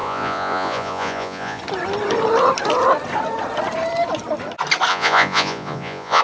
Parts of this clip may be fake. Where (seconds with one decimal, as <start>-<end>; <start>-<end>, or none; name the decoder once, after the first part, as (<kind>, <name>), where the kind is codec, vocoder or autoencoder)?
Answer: 0.0-1.6 (vocoder, Vocos); 4.9-6.2